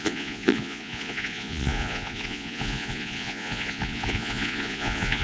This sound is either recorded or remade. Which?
remade